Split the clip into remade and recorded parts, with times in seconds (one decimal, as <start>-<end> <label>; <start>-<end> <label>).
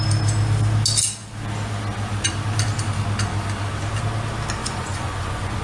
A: 0.0-4.6 recorded; 4.6-5.6 remade